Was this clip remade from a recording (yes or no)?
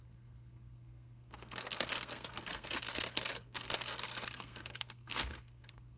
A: yes